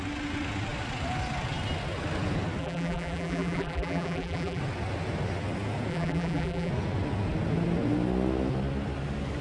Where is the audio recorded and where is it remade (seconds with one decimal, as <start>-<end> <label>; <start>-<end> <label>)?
0.0-2.6 recorded; 2.6-4.6 remade; 4.6-5.9 recorded; 5.9-6.7 remade; 6.7-9.4 recorded